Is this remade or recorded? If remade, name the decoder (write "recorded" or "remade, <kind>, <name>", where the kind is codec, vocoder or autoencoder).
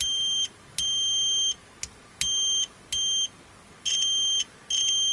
recorded